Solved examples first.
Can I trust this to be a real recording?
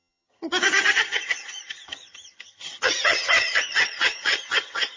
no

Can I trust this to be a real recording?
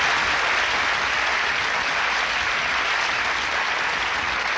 yes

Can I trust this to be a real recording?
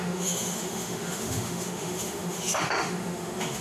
no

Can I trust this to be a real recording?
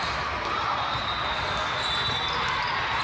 yes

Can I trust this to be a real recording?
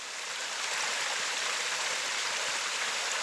yes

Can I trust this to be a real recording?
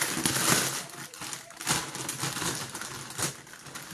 yes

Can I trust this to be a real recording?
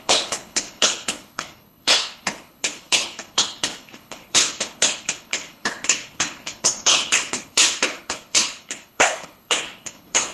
no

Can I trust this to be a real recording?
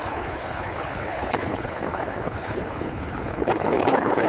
no